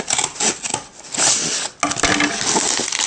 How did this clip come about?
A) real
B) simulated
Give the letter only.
A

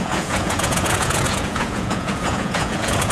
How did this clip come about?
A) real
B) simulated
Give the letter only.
B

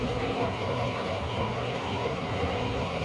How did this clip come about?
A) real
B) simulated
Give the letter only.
B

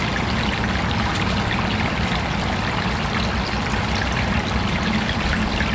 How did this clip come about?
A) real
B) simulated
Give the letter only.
A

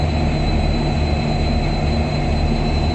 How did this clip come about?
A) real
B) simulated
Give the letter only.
A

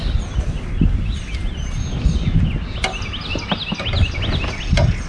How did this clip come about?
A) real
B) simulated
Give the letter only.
A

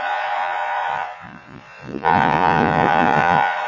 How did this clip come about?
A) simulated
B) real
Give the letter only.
A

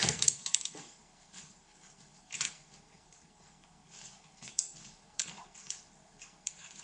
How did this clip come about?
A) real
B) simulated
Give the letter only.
B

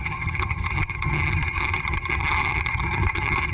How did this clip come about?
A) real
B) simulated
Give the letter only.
B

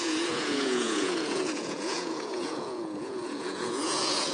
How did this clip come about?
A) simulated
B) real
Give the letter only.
A